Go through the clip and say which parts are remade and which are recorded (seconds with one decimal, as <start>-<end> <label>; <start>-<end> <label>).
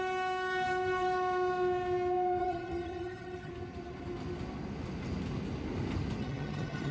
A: 0.0-2.4 recorded; 2.4-3.5 remade; 3.5-6.2 recorded; 6.2-6.9 remade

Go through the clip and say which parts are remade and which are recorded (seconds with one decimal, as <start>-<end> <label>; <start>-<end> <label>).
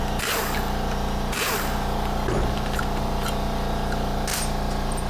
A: 0.0-4.3 recorded; 4.3-5.1 remade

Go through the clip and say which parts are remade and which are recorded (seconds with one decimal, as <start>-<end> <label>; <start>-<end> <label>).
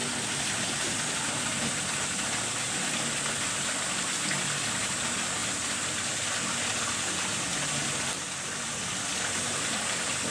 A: 0.0-4.2 remade; 4.2-10.3 recorded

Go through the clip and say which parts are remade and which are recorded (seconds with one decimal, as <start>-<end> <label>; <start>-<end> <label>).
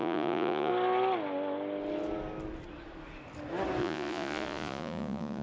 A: 0.0-0.7 remade; 0.7-3.8 recorded; 3.8-5.4 remade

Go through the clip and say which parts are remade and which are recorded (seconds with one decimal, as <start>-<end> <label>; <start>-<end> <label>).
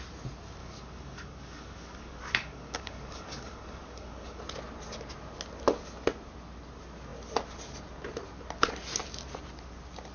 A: 0.0-0.6 recorded; 0.6-4.4 remade; 4.4-10.1 recorded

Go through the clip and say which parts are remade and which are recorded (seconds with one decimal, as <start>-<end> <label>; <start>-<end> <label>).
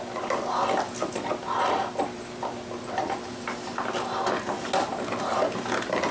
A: 0.0-6.1 recorded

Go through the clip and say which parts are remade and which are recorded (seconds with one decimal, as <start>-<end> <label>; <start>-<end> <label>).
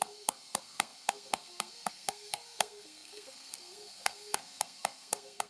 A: 0.0-5.5 remade